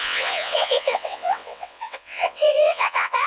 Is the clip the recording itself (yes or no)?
no